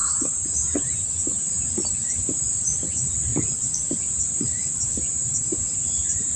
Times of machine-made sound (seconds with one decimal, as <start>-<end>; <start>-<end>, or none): 0.0-3.3; 4.3-6.4